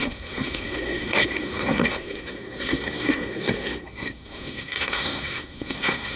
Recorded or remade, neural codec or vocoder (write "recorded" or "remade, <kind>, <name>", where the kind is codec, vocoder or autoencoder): remade, codec, SNAC